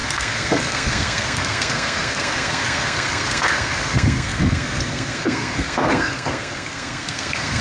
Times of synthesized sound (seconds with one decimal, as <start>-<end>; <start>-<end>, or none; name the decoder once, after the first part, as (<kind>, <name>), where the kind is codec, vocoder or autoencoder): 0.0-7.6 (codec, SNAC)

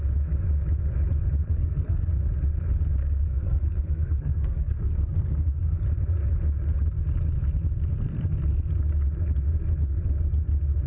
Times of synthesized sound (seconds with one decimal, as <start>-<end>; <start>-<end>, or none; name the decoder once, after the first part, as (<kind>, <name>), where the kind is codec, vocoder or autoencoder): 1.4-2.1 (codec, SNAC); 3.0-5.8

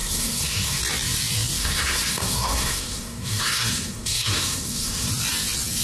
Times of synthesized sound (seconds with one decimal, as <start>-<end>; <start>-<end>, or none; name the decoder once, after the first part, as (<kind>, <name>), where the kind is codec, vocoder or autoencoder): 0.0-0.8 (codec, SNAC); 1.6-5.1

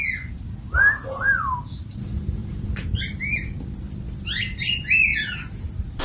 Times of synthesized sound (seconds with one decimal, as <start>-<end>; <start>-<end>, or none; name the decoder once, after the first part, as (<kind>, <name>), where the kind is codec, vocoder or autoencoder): 2.4-3.6 (vocoder, BigVGAN v2)

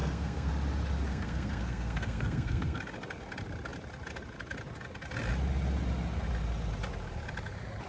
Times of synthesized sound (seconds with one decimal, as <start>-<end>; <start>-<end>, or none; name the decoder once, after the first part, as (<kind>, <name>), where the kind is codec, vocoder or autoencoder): 0.0-0.5 (codec, SNAC); 1.1-2.8

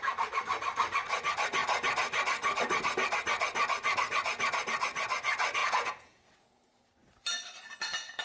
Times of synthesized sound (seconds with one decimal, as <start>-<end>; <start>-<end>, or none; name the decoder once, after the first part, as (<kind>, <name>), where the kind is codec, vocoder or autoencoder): 5.6-6.8 (vocoder, Vocos)

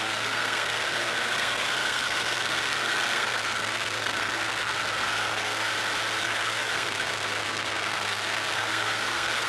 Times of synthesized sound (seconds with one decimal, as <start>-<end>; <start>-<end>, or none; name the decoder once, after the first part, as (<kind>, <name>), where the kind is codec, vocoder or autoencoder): 0.0-5.7 (codec, SNAC); 6.2-9.5

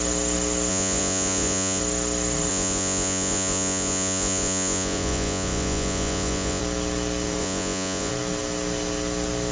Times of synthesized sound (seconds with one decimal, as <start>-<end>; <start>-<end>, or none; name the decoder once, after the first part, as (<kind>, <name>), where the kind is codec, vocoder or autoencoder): 0.7-1.8 (vocoder, Vocos); 2.5-6.6; 7.4-8.1